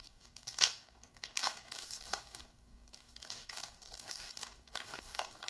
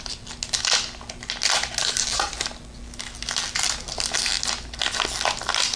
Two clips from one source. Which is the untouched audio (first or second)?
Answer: second